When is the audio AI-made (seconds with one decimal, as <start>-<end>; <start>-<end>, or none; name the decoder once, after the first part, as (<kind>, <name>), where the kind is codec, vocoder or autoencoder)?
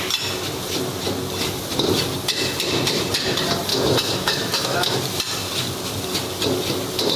3.7-4.9 (autoencoder, DAC-VAE)